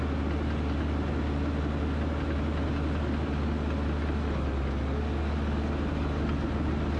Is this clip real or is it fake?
real